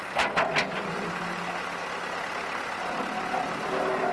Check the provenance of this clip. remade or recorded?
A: recorded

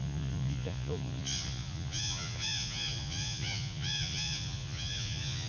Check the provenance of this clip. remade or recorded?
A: remade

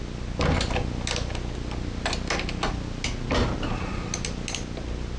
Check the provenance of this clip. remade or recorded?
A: recorded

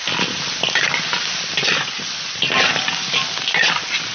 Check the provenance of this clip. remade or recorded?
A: recorded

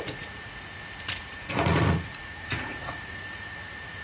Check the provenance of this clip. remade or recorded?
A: remade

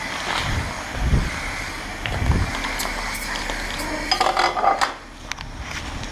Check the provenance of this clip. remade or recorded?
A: recorded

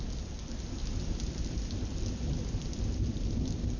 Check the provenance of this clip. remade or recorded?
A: recorded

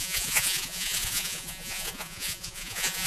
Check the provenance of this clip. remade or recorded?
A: remade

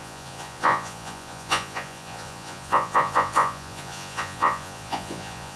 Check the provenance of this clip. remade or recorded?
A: remade